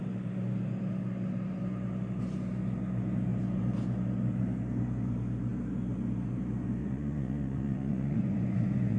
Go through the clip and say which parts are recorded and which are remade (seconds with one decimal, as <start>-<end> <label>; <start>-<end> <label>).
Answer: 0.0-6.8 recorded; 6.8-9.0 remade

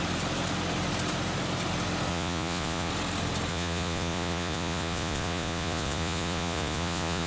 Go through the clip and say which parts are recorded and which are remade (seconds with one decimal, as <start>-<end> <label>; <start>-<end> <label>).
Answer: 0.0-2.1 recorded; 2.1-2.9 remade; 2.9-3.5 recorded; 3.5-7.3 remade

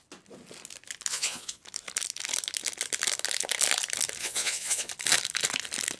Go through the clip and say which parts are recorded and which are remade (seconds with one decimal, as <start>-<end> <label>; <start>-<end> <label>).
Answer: 0.0-1.1 recorded; 1.1-1.6 remade; 1.6-4.2 recorded; 4.2-4.9 remade; 4.9-6.0 recorded

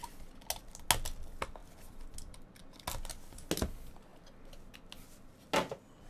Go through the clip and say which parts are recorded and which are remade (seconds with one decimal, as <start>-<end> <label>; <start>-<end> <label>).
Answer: 0.0-6.1 recorded

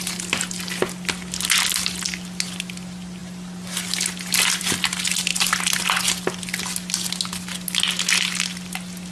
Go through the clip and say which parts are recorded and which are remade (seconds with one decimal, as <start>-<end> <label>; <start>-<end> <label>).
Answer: 0.0-9.1 recorded

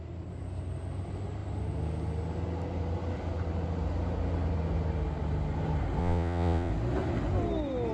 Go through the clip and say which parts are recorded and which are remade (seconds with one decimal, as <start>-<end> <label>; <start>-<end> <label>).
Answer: 0.0-6.0 recorded; 6.0-6.7 remade; 6.7-7.9 recorded

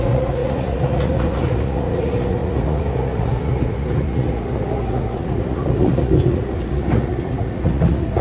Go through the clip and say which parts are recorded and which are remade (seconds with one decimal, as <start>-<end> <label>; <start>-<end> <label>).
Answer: 0.0-8.2 remade

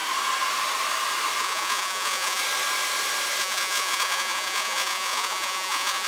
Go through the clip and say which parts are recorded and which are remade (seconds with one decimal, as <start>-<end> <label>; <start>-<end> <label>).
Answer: 0.0-1.4 recorded; 1.4-2.4 remade; 2.4-3.4 recorded; 3.4-6.1 remade